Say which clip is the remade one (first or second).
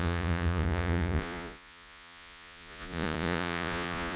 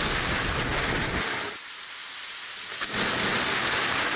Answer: first